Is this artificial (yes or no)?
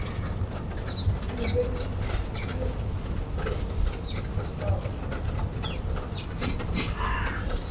no